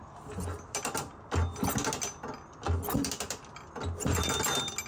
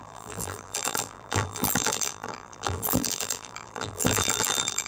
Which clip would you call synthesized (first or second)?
second